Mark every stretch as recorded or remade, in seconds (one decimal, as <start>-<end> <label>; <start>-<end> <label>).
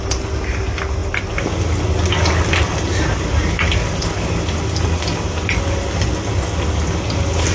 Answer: 0.0-7.5 recorded